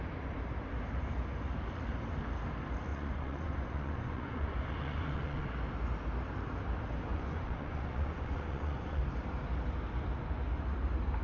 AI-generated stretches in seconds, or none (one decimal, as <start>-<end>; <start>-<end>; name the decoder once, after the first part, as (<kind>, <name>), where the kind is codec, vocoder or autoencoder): 2.9-5.5 (vocoder, Vocos); 7.1-9.0